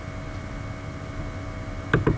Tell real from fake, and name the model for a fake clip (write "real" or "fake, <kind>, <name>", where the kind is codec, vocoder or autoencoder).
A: real